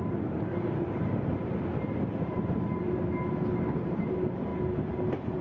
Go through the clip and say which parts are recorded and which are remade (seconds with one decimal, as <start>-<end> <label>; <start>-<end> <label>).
0.0-5.4 recorded